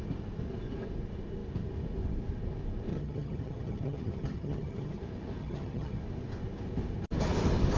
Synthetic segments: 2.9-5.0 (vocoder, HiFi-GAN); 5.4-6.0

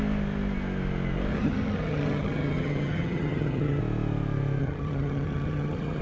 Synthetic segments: 1.3-3.8 (vocoder, HiFi-GAN); 4.6-6.0

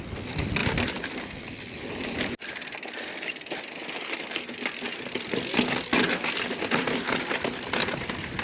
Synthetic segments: none

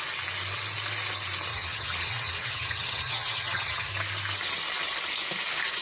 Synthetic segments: 1.5-3.9 (vocoder, HiFi-GAN)

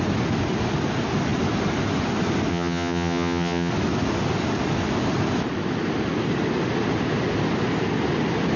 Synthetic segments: 2.5-3.7 (vocoder, HiFi-GAN)

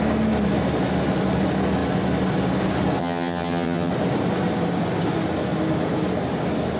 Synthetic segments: 3.0-3.9 (vocoder, HiFi-GAN)